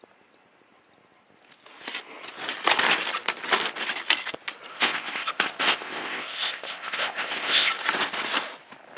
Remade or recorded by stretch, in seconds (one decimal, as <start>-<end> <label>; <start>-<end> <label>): 0.0-4.7 recorded; 4.7-7.7 remade; 7.7-9.0 recorded

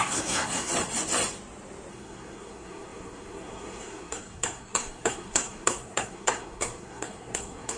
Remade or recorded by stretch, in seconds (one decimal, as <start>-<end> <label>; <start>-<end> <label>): 0.0-0.7 remade; 0.7-1.9 recorded; 1.9-7.8 remade

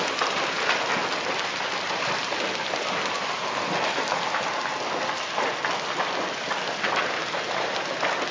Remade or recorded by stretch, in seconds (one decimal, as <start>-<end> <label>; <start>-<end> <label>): 0.0-8.3 recorded

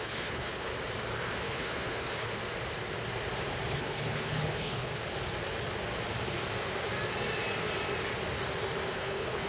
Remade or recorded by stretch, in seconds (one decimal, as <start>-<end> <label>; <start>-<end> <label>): 0.0-0.7 remade; 0.7-1.4 recorded; 1.4-2.4 remade; 2.4-3.7 recorded; 3.7-4.9 remade; 4.9-8.9 recorded; 8.9-9.5 remade

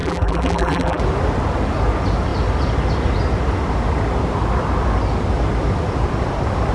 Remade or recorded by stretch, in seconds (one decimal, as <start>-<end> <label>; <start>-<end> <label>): 0.0-1.0 remade; 1.0-6.7 recorded

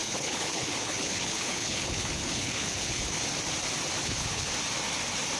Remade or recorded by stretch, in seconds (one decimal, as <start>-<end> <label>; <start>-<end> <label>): 0.0-3.2 remade; 3.2-4.0 recorded; 4.0-4.5 remade; 4.5-5.4 recorded